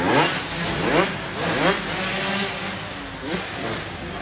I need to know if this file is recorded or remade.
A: recorded